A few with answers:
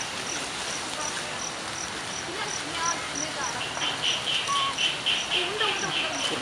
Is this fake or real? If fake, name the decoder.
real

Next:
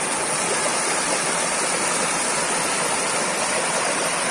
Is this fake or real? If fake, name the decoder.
real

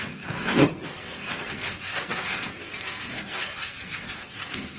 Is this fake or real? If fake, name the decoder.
fake, codec, SNAC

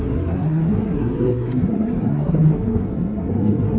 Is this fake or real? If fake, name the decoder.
fake, codec, SNAC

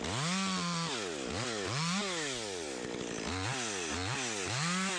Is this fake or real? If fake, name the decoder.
real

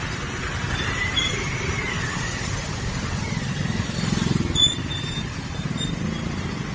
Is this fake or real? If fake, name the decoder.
real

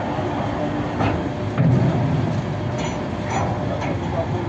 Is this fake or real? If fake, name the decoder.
real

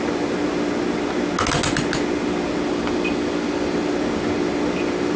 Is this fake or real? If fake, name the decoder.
real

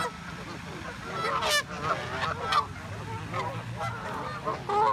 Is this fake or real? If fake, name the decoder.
real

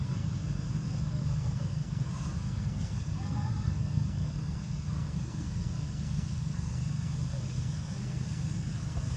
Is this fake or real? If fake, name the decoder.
fake, codec, SNAC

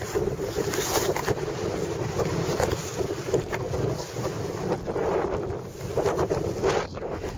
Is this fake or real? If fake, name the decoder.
real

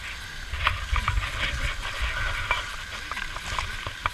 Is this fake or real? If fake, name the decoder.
real